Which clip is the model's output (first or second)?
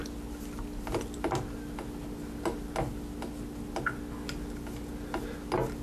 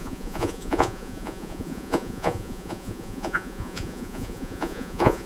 second